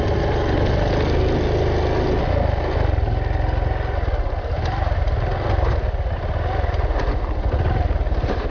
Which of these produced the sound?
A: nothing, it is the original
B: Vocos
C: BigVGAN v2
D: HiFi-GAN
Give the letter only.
A